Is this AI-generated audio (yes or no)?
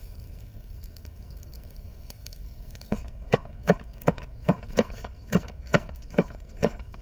yes